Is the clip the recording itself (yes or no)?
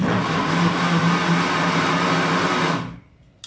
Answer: yes